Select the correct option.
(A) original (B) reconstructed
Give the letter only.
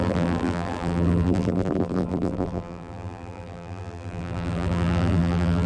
B